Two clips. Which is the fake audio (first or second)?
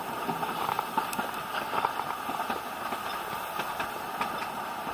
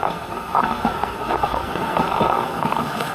second